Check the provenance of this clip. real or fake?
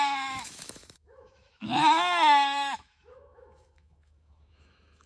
fake